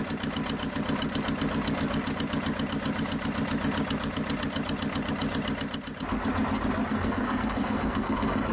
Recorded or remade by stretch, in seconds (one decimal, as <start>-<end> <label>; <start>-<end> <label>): 0.0-6.9 recorded; 6.9-8.5 remade